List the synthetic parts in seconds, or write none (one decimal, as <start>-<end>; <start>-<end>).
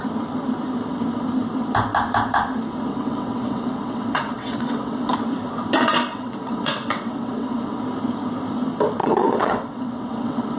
2.9-5.1; 6.1-7.8; 9.0-10.6